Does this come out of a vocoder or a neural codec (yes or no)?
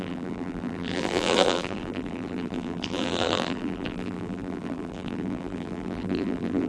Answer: yes